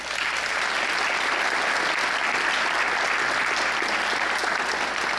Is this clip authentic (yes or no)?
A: yes